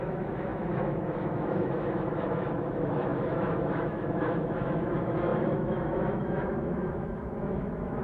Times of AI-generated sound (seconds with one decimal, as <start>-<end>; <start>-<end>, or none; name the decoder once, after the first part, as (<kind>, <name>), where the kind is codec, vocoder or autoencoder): 0.0-8.0 (autoencoder, DAC-VAE)